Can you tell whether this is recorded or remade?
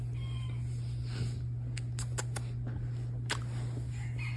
recorded